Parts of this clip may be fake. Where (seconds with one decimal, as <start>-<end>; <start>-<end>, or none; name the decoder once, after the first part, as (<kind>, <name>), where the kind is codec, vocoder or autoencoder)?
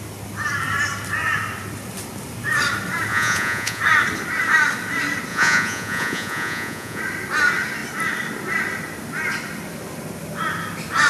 3.1-3.8 (vocoder, Vocos); 5.3-7.0